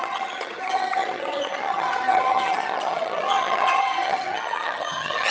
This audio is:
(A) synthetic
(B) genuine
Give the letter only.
A